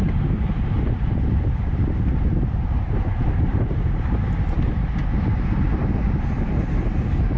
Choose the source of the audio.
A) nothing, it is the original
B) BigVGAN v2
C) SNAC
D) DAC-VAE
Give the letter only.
B